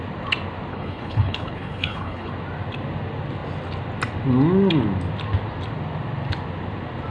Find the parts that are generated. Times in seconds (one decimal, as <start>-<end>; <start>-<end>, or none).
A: 0.7-2.3